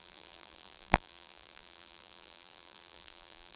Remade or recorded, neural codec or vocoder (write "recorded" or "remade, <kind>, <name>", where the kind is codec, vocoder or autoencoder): remade, vocoder, BigVGAN v2